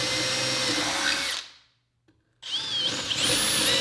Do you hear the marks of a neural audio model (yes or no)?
no